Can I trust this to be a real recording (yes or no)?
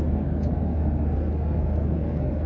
no